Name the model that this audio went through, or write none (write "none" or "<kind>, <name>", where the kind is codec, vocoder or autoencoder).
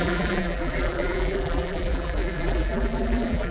vocoder, BigVGAN v2